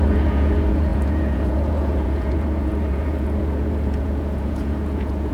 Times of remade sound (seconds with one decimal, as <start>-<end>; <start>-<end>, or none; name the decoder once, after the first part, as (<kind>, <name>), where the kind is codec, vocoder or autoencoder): 0.0-5.3 (vocoder, Vocos)